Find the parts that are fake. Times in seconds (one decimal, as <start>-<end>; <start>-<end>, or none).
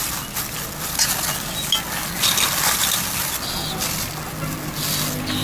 none